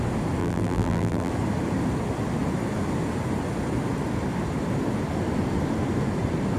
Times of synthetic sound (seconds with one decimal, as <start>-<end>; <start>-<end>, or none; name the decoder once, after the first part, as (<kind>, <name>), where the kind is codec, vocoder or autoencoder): 0.4-1.3 (vocoder, BigVGAN v2)